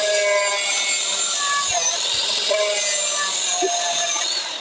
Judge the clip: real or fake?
real